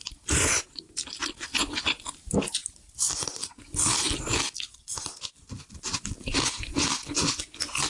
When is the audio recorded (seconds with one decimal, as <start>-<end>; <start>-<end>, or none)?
0.0-2.6; 3.1-4.9; 6.1-7.9